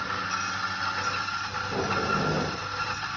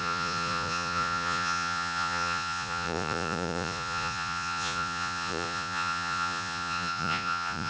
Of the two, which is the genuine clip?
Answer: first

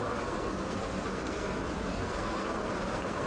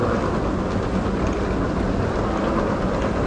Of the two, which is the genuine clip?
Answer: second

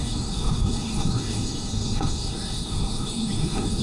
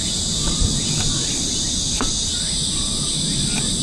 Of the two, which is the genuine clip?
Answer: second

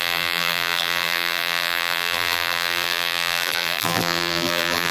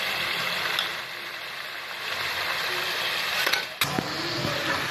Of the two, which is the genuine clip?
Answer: second